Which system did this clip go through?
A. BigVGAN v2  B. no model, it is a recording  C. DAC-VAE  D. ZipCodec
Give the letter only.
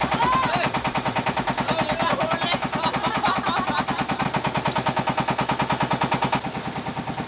B